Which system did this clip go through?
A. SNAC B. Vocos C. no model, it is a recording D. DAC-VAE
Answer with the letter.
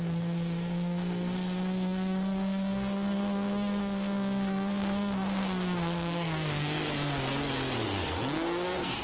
A